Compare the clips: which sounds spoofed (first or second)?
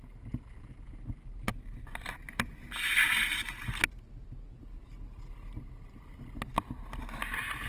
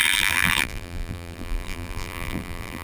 second